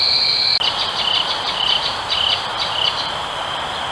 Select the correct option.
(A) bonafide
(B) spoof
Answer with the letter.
B